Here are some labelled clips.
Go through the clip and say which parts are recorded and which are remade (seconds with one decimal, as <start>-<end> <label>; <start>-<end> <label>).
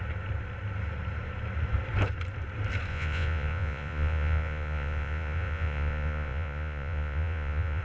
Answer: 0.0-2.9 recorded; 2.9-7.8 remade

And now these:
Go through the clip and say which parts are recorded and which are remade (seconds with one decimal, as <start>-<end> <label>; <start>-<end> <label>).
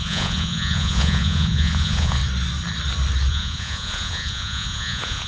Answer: 0.0-2.2 remade; 2.2-3.3 recorded; 3.3-5.3 remade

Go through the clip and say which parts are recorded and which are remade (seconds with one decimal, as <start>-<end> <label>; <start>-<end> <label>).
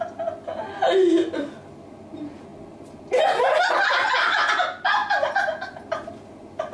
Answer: 0.0-6.7 recorded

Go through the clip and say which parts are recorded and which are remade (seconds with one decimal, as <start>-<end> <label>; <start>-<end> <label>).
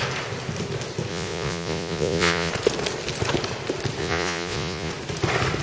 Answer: 0.0-1.1 recorded; 1.1-2.5 remade; 2.5-4.0 recorded; 4.0-4.9 remade; 4.9-5.6 recorded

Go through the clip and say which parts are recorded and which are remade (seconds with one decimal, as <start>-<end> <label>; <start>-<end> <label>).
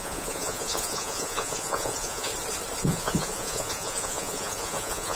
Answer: 0.0-2.3 remade; 2.3-2.8 recorded; 2.8-5.1 remade